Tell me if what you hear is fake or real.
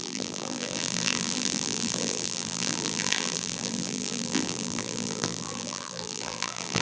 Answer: fake